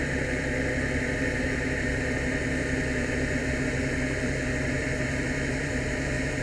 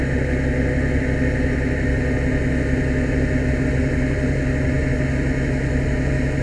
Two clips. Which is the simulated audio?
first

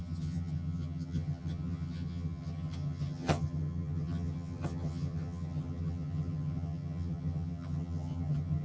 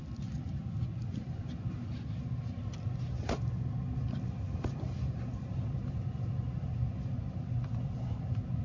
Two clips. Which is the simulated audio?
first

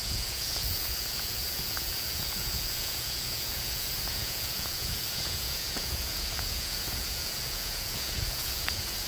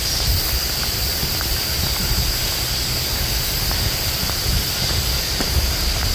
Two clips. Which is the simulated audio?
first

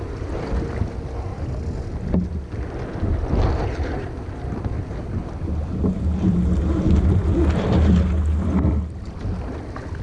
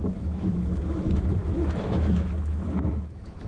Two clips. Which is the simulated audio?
second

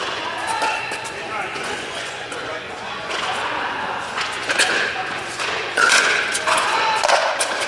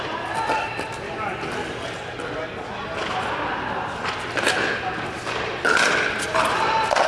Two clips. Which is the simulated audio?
first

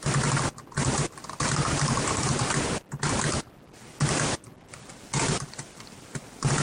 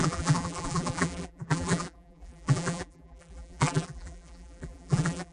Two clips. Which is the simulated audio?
second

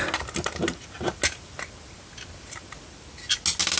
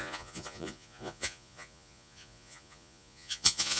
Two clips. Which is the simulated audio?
second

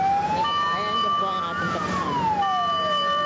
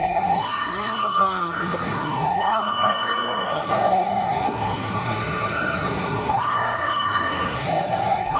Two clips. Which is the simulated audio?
second